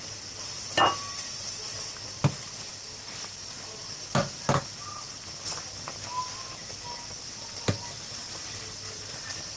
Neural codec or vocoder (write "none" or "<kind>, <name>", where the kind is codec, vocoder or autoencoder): none